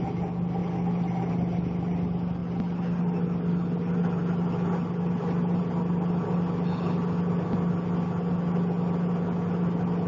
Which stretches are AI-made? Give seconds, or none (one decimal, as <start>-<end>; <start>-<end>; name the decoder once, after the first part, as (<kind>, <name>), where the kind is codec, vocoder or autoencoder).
none